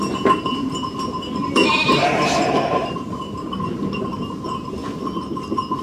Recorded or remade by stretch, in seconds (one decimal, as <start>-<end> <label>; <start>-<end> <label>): 0.0-4.8 remade; 4.8-5.8 recorded

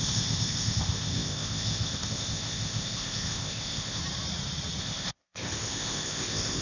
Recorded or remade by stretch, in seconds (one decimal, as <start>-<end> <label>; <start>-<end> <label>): 0.0-4.0 remade; 4.0-4.8 recorded; 4.8-6.6 remade

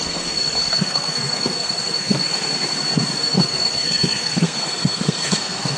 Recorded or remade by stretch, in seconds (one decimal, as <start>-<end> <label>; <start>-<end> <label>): 0.0-2.5 remade; 2.5-3.2 recorded; 3.2-5.8 remade

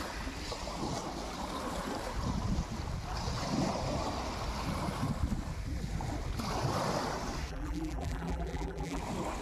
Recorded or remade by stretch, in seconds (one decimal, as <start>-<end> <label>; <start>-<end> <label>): 0.0-7.5 recorded; 7.5-9.0 remade; 9.0-9.4 recorded

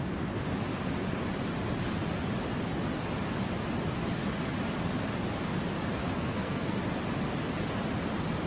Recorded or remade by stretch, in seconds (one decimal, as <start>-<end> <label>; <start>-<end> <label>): 0.0-6.2 recorded; 6.2-6.8 remade; 6.8-8.5 recorded

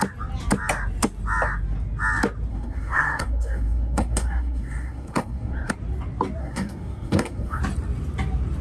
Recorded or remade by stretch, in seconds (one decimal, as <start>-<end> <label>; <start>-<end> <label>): 0.0-2.5 recorded; 2.5-5.7 remade; 5.7-6.4 recorded; 6.4-7.6 remade; 7.6-8.6 recorded

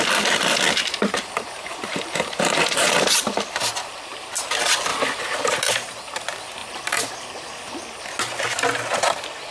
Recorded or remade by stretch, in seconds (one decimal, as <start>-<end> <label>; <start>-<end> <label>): 0.0-0.8 recorded; 0.8-3.0 remade; 3.0-3.7 recorded; 3.7-4.3 remade; 4.3-4.9 recorded; 4.9-5.7 remade; 5.7-6.6 recorded; 6.6-7.1 remade; 7.1-9.5 recorded

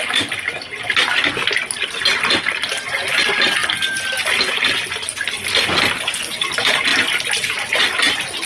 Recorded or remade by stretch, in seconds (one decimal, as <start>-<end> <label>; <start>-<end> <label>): 0.0-8.5 recorded